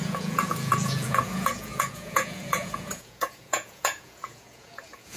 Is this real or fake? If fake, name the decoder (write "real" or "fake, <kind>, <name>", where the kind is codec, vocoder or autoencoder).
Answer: fake, vocoder, Vocos